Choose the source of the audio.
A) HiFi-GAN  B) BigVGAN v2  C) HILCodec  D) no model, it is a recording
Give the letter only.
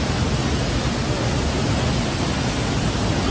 D